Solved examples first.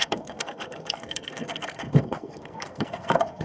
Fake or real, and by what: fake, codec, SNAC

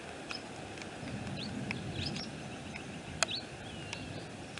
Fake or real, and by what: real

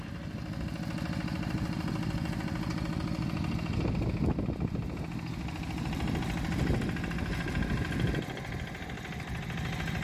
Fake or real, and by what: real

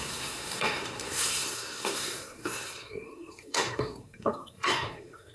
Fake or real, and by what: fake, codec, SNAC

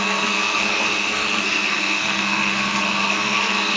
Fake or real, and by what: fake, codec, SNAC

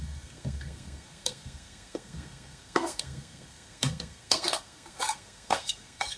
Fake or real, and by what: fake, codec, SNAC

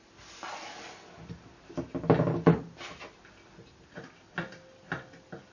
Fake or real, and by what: real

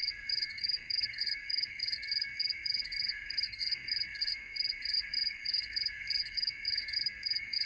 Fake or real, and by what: fake, codec, SNAC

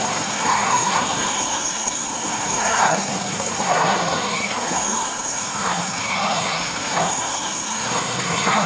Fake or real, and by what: fake, codec, SNAC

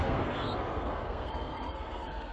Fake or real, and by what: fake, codec, SNAC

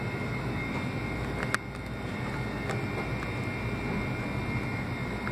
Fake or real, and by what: real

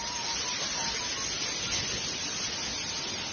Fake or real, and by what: real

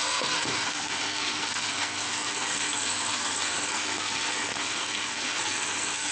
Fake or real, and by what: fake, codec, SNAC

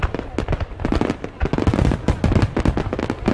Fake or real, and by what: real